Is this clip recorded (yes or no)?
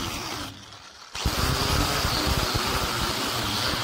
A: no